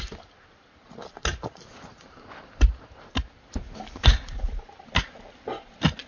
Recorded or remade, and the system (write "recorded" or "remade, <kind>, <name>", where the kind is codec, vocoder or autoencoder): recorded